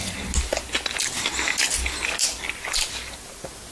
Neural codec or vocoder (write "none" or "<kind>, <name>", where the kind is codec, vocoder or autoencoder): none